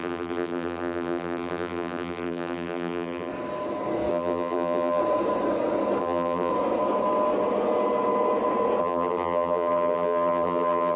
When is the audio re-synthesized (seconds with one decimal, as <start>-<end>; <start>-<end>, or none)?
0.0-3.3; 4.1-5.0; 6.0-6.5; 8.8-11.0